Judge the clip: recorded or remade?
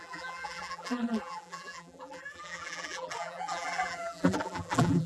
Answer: remade